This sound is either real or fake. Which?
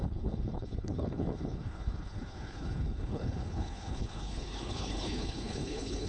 fake